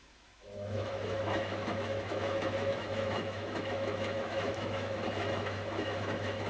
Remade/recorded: remade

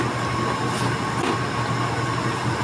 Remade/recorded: recorded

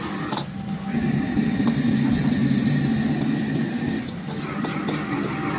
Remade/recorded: recorded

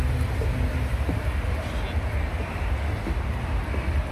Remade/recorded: recorded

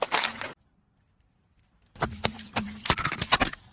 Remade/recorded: remade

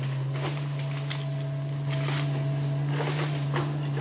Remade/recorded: recorded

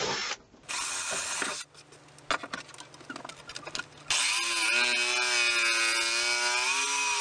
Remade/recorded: recorded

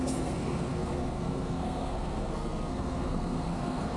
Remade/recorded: remade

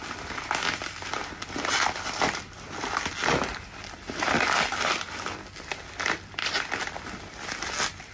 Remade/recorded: recorded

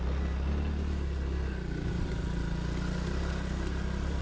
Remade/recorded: recorded